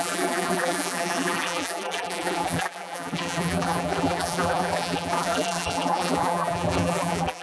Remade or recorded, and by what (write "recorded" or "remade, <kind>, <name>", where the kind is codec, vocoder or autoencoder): remade, vocoder, BigVGAN v2